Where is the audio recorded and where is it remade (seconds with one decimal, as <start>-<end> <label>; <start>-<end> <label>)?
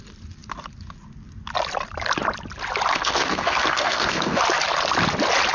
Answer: 0.0-2.9 recorded; 2.9-4.4 remade; 4.4-5.5 recorded